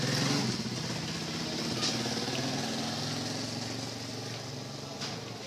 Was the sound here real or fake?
real